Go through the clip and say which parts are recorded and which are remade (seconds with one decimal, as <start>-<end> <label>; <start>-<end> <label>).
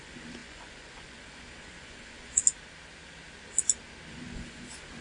0.0-2.4 remade; 2.4-4.1 recorded; 4.1-5.0 remade